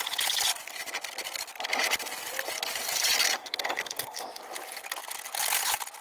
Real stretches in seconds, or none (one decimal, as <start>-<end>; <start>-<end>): 0.0-3.4; 4.4-6.0